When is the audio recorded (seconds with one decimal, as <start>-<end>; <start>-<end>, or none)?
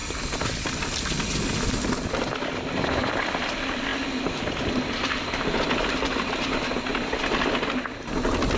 0.0-8.6